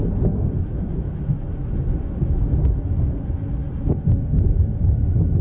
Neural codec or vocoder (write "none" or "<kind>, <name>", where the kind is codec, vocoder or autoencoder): none